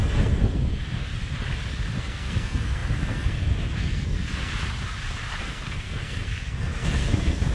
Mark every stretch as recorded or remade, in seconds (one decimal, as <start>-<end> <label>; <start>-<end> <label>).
0.0-1.1 remade; 1.1-2.0 recorded; 2.0-4.5 remade; 4.5-5.4 recorded; 5.4-7.5 remade